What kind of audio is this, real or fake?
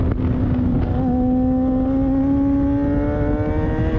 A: real